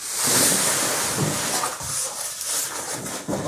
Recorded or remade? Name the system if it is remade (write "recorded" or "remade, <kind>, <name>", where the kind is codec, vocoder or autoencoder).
recorded